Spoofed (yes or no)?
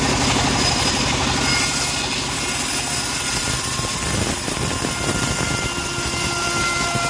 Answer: no